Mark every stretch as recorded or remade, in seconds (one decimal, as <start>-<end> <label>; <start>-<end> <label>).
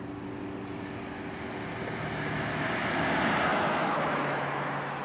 0.0-3.5 recorded; 3.5-5.0 remade